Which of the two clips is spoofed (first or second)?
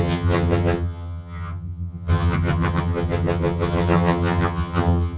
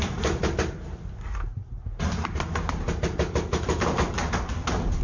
first